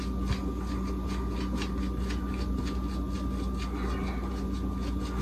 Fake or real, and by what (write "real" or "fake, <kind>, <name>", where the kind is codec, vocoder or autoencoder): real